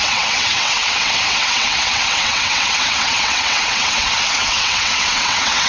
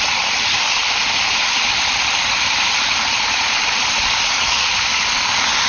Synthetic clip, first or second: first